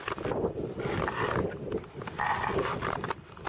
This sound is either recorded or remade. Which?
recorded